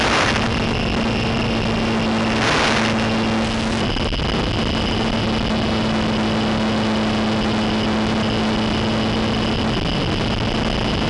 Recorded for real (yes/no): yes